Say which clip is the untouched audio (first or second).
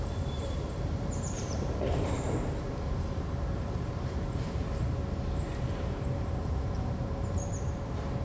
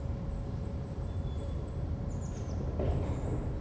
second